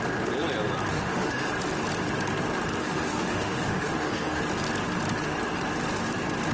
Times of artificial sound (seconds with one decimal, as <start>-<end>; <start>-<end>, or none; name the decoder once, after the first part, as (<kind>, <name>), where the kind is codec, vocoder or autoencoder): 0.9-1.5 (autoencoder, DAC-VAE); 2.8-4.4